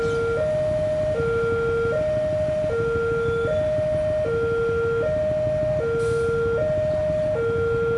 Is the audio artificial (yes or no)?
no